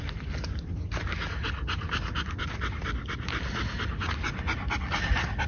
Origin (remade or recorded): recorded